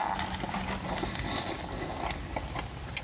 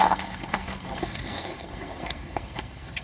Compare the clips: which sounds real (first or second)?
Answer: first